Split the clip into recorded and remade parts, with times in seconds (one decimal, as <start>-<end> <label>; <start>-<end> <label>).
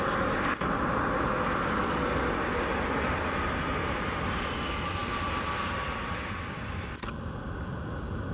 0.0-8.3 recorded